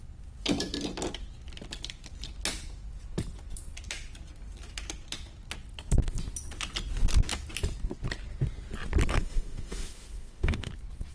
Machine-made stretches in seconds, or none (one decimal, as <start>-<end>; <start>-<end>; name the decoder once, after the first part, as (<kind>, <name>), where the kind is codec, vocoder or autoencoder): 9.1-10.7 (autoencoder, DAC-VAE)